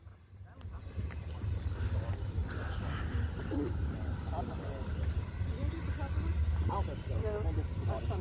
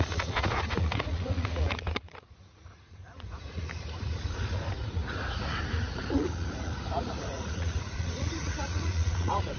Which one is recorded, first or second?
first